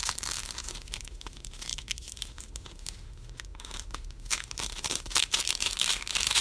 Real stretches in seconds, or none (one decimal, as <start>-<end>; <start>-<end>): none